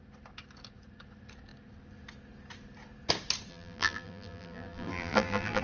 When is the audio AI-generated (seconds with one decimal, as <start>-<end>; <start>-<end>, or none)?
3.5-5.6

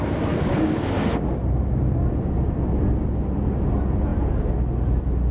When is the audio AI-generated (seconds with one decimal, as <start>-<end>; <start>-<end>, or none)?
none

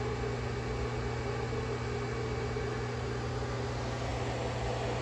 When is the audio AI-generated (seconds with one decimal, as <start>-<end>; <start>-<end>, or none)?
none

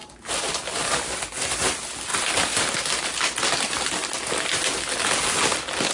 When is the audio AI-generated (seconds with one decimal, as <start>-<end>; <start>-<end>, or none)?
0.0-0.5